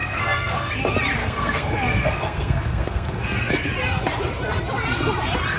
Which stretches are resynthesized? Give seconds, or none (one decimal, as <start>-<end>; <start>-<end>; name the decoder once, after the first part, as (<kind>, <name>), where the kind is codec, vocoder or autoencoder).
0.0-0.7 (codec, SNAC); 1.2-3.5